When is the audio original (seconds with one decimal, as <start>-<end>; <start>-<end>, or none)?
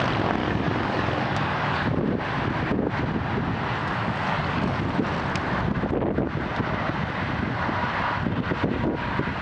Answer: 0.0-0.4; 2.0-3.8; 4.8-9.4